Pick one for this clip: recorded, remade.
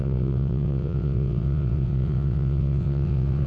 remade